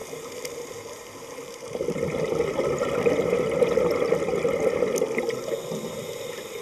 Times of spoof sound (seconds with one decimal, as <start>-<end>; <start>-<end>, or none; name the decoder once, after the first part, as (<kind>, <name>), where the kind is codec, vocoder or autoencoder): none